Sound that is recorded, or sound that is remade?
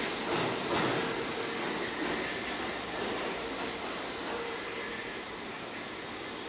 recorded